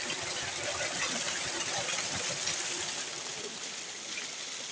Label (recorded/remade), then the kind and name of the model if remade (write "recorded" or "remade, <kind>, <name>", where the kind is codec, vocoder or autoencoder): recorded